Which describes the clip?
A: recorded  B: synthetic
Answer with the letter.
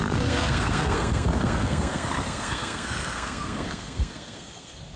B